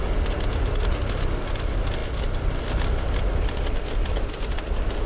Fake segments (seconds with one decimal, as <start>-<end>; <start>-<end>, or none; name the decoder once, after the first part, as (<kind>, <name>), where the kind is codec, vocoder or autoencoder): none